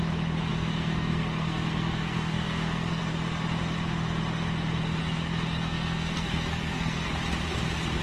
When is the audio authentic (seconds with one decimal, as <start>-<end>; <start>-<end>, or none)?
0.0-0.5; 3.0-5.7; 7.1-8.0